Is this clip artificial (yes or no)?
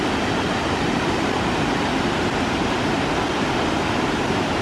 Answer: no